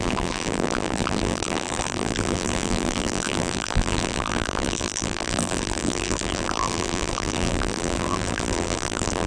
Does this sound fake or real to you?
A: fake